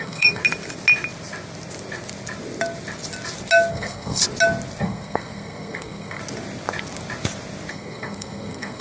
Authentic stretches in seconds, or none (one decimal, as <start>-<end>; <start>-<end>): 0.4-3.7; 4.2-4.8; 6.2-7.7